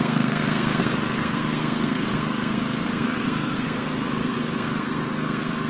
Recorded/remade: remade